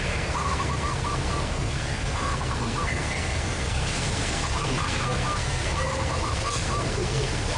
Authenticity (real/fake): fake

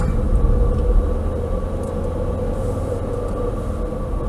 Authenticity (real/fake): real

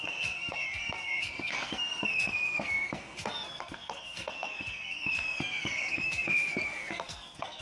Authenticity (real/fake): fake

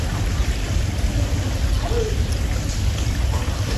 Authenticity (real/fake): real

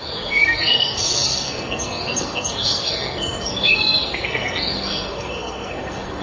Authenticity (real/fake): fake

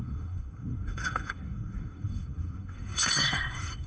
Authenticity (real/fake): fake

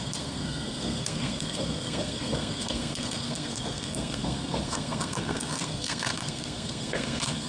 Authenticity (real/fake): fake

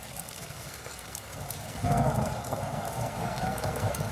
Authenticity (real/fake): fake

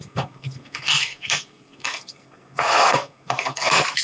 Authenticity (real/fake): fake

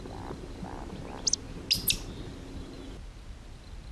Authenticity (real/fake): real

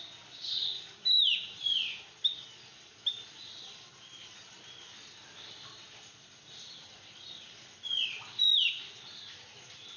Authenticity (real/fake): real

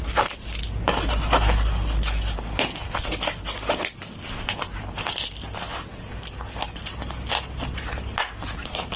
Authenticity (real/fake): real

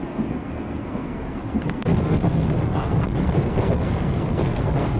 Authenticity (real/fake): fake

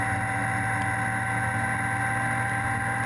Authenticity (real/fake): real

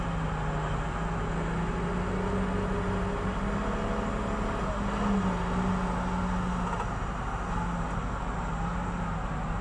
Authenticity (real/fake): real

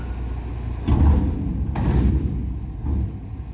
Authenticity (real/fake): real